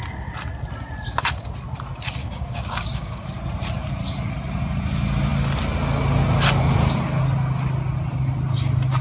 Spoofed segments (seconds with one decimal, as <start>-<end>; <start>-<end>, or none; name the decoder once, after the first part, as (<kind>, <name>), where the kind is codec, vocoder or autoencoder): 2.2-3.3 (codec, DAC)